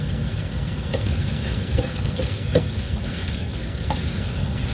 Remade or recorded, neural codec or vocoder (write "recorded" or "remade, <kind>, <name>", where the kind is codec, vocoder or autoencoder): remade, codec, SNAC